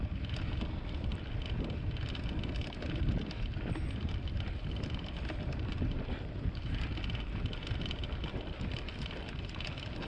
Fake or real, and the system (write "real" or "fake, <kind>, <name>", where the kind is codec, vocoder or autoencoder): real